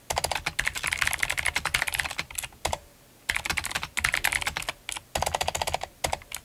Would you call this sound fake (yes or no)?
no